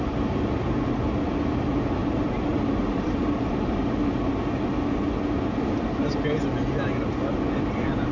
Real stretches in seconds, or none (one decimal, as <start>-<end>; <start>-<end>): 0.0-2.0; 3.9-8.1